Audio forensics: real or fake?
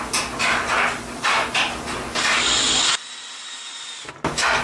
real